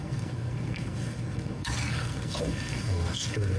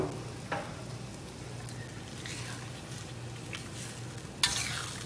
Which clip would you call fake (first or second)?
first